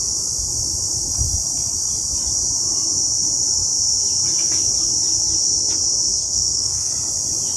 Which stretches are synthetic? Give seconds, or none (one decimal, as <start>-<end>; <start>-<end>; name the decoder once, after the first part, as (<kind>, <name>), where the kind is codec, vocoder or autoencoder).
6.2-6.9 (codec, SNAC)